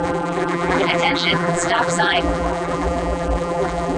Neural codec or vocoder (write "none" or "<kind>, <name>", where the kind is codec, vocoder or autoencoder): vocoder, BigVGAN v2